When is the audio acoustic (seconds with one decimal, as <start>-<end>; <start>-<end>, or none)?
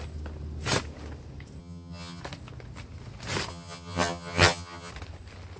0.0-1.6; 2.2-3.5; 4.9-5.6